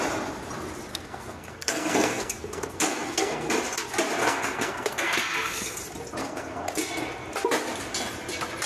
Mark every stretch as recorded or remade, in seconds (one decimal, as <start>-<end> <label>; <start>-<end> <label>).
0.0-0.9 recorded; 0.9-3.5 remade; 3.5-4.2 recorded; 4.2-5.8 remade; 5.8-6.2 recorded; 6.2-6.7 remade; 6.7-8.7 recorded